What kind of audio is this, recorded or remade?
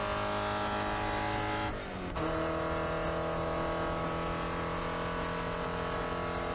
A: recorded